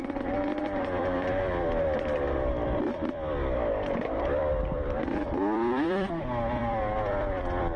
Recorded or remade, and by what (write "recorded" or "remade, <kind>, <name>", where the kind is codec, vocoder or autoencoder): remade, vocoder, BigVGAN v2